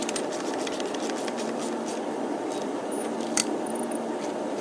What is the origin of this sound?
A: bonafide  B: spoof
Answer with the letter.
B